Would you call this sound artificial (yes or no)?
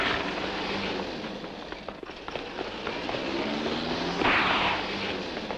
no